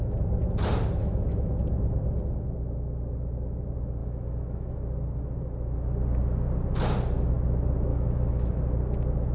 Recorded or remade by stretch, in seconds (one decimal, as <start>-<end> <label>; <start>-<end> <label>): 0.0-1.0 recorded; 1.0-1.5 remade; 1.5-4.0 recorded; 4.0-4.8 remade; 4.8-7.9 recorded; 7.9-8.6 remade; 8.6-9.3 recorded